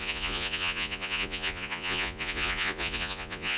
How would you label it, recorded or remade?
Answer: remade